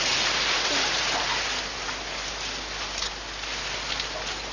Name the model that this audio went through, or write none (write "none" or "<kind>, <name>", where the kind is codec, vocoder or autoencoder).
none